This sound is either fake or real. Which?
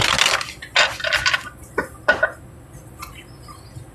real